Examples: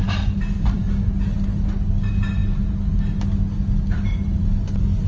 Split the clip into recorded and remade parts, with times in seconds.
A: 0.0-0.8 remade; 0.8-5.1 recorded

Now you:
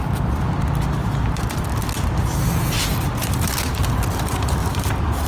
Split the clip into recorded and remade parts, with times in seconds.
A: 0.0-3.2 recorded; 3.2-3.8 remade; 3.8-4.6 recorded; 4.6-5.3 remade

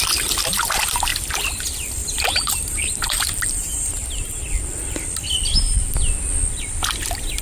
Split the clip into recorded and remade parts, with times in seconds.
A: 0.0-2.0 recorded; 2.0-4.4 remade; 4.4-7.4 recorded

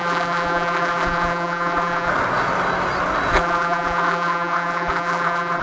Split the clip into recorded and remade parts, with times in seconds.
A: 0.0-2.1 remade; 2.1-3.3 recorded; 3.3-5.6 remade

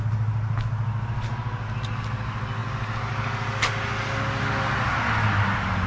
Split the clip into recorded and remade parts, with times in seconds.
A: 0.0-5.9 recorded

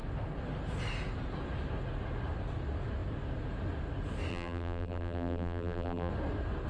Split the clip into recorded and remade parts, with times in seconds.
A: 0.0-4.3 recorded; 4.3-6.1 remade; 6.1-6.7 recorded